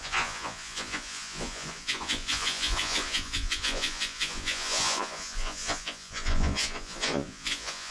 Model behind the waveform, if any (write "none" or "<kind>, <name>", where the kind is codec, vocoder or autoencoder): vocoder, Vocos